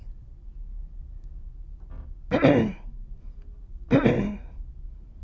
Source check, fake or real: real